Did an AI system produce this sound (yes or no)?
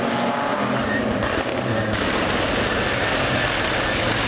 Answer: no